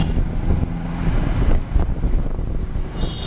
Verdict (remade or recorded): recorded